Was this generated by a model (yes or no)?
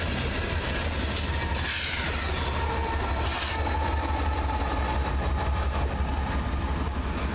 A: no